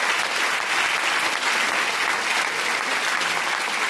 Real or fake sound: real